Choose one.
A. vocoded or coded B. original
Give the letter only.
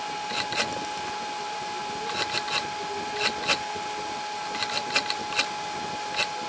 B